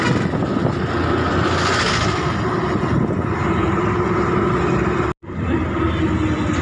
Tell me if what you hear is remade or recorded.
recorded